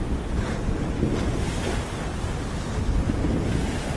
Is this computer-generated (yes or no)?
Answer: no